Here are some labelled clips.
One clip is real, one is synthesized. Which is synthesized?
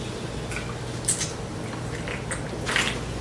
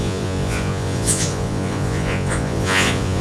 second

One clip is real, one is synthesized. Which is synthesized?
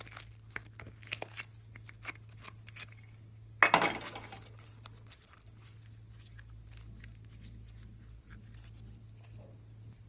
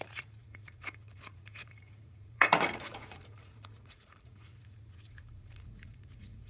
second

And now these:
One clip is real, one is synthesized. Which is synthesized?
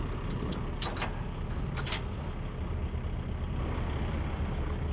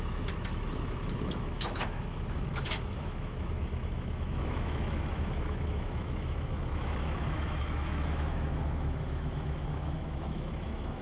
second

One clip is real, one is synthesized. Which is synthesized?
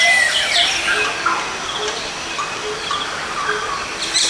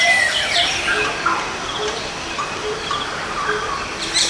second